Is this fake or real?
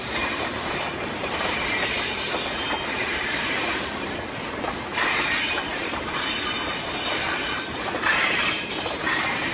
fake